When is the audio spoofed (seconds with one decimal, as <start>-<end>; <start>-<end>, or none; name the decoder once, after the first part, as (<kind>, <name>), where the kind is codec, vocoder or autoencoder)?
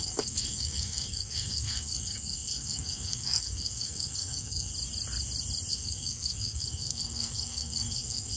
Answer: 0.0-4.7 (codec, SNAC); 5.7-8.4